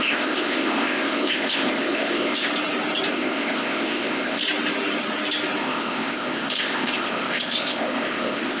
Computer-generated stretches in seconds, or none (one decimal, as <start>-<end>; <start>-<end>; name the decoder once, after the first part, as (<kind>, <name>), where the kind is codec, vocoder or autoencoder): 0.0-2.5 (codec, ZipCodec); 3.1-4.4; 5.6-8.6